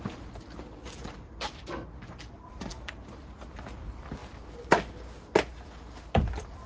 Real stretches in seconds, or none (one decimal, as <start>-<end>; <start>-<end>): 0.0-6.7